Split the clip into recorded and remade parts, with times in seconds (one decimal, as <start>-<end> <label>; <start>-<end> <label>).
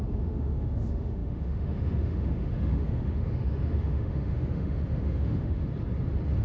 0.0-5.7 remade; 5.7-6.4 recorded